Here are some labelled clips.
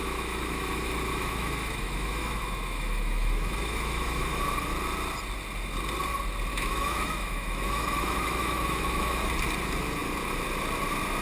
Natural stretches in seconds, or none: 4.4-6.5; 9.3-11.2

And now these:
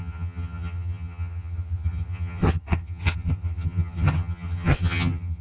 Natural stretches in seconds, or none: none

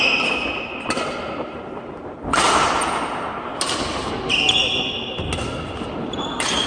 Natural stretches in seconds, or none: 0.0-6.7

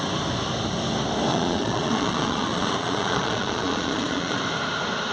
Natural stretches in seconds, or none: 0.0-1.3; 4.4-5.1

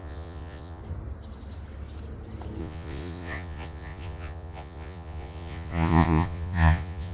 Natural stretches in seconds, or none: 0.8-2.6